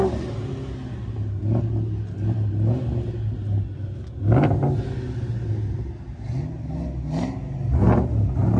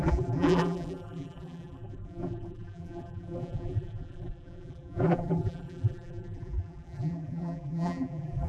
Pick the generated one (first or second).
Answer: second